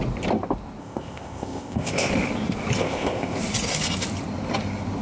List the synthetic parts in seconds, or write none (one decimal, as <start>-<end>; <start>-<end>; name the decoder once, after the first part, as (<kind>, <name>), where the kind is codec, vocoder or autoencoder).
0.8-2.1 (codec, ZipCodec); 2.8-3.4